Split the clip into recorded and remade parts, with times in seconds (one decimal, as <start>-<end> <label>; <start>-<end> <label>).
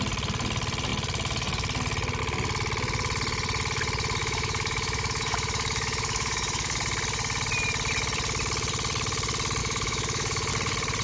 0.0-4.2 recorded; 4.2-6.8 remade; 6.8-9.6 recorded; 9.6-10.5 remade; 10.5-11.0 recorded